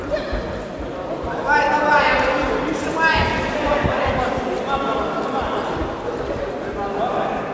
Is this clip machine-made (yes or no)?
no